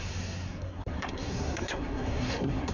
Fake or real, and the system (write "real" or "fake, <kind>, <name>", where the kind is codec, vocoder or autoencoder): fake, codec, SNAC